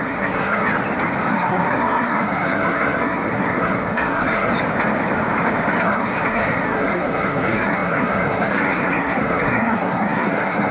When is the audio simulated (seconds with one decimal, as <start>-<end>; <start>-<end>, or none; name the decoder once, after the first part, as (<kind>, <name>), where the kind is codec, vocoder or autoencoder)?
0.0-0.7 (codec, SNAC); 1.3-4.5; 5.8-10.7